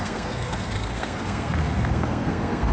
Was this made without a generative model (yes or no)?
no